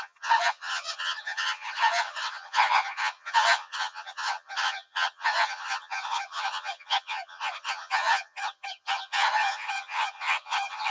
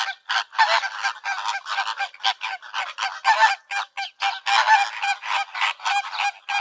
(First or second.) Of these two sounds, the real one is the second